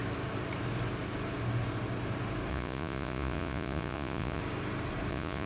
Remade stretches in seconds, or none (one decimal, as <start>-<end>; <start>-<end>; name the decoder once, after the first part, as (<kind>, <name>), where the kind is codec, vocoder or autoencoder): 2.5-4.4 (vocoder, Vocos); 5.1-5.5